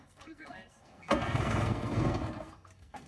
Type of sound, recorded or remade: remade